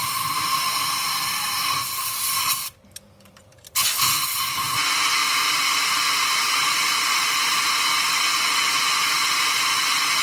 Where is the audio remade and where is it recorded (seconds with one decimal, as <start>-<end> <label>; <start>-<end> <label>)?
0.0-3.4 remade; 3.4-5.2 recorded; 5.2-7.7 remade; 7.7-10.2 recorded